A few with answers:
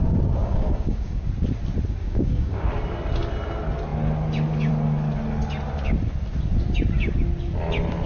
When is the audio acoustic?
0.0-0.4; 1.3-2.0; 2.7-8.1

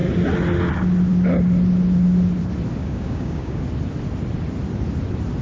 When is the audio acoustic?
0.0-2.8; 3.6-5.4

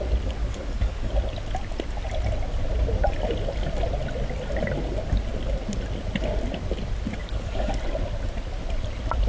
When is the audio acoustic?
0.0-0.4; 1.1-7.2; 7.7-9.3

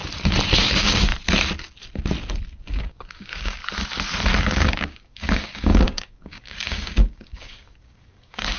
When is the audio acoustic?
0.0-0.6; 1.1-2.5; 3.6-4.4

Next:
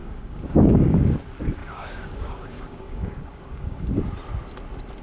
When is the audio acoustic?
1.2-1.6; 3.9-5.0

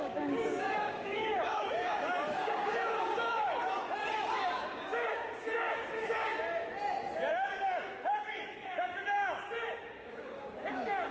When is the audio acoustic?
6.3-7.5

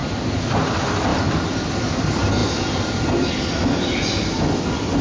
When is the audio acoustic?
0.0-5.0